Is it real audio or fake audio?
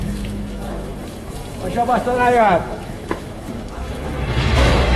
fake